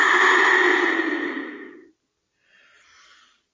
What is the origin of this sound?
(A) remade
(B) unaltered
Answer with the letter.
B